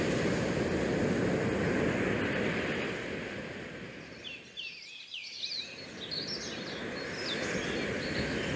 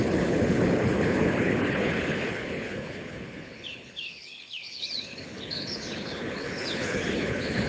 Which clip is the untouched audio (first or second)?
first